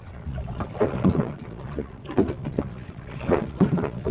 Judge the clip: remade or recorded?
remade